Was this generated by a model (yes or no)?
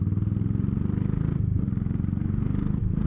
no